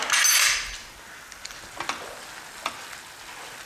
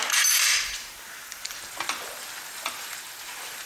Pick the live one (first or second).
first